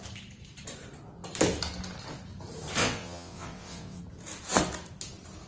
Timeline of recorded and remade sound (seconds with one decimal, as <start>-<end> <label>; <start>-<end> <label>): 0.0-2.8 recorded; 2.8-4.0 remade; 4.0-5.5 recorded